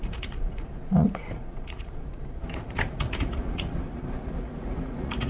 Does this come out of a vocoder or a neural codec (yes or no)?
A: yes